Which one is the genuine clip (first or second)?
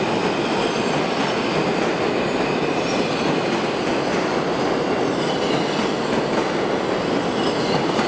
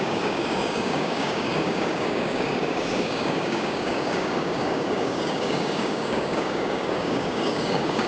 first